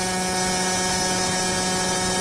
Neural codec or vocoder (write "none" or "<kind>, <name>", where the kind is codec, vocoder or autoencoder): none